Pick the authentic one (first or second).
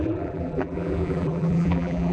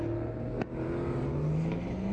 second